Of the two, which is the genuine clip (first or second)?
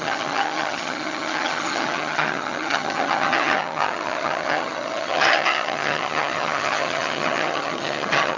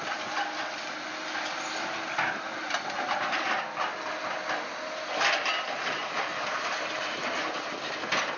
second